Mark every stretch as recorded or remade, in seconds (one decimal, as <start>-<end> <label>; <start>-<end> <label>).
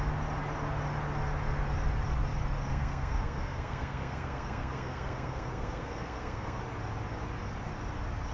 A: 0.0-2.7 recorded; 2.7-6.6 remade; 6.6-8.3 recorded